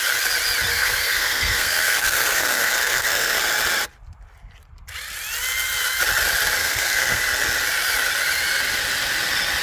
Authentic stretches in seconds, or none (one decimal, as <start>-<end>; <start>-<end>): 0.0-0.7; 3.4-6.6; 7.2-9.6

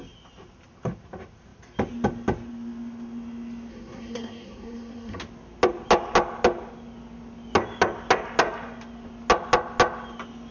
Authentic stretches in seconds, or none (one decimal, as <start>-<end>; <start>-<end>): 0.0-3.7; 5.2-10.5

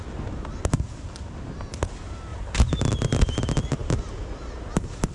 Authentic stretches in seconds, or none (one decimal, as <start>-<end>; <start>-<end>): 0.0-5.1

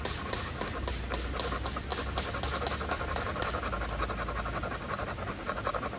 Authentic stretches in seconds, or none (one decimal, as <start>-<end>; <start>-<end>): 0.0-6.0